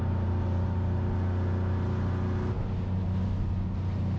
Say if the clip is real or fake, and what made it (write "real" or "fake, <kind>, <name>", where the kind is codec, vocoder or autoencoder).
real